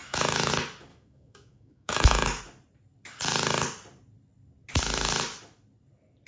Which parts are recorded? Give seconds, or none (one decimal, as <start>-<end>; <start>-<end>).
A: 0.5-0.9; 2.4-6.3